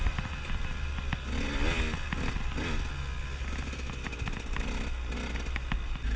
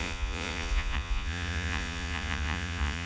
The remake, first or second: second